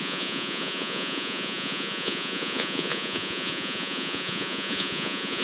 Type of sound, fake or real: fake